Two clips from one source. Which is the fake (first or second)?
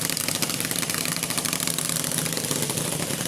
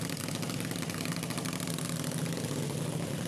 first